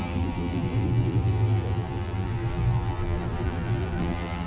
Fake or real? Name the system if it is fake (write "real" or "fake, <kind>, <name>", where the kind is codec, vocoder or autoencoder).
fake, vocoder, BigVGAN v2